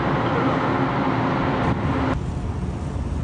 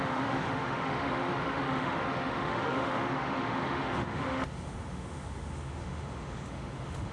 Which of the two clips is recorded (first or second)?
first